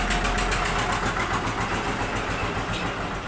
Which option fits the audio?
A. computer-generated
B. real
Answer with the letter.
B